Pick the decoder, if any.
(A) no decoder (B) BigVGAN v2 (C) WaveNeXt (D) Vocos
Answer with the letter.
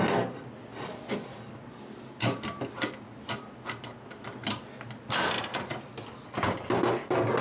A